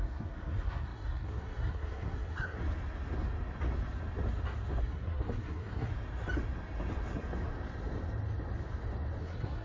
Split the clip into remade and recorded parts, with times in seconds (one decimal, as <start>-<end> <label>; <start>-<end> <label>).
0.0-2.6 remade; 2.6-4.8 recorded; 4.8-5.9 remade; 5.9-9.2 recorded; 9.2-9.6 remade